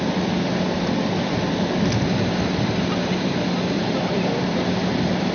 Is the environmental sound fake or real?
real